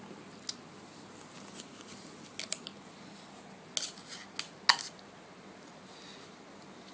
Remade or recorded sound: recorded